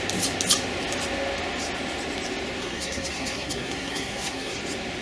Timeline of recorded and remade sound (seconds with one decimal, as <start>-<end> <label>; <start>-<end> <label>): 0.0-2.6 recorded; 2.6-4.6 remade; 4.6-5.0 recorded

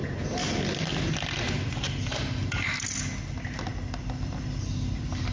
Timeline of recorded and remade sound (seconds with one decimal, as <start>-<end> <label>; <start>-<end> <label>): 0.0-5.3 recorded

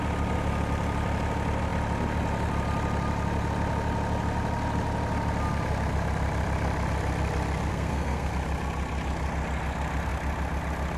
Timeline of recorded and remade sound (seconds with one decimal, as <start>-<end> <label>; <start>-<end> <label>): 0.0-7.7 recorded; 7.7-8.3 remade; 8.3-11.0 recorded

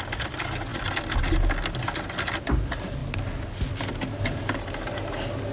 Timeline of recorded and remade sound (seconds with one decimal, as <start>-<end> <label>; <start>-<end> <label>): 0.0-5.5 recorded